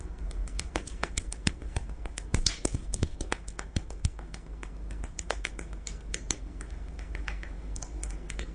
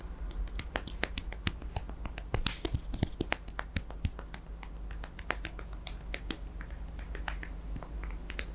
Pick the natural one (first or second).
second